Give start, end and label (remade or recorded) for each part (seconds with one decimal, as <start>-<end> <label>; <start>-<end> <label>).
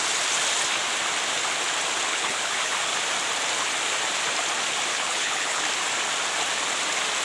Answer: 0.0-2.1 recorded; 2.1-2.7 remade; 2.7-4.9 recorded; 4.9-5.6 remade; 5.6-7.2 recorded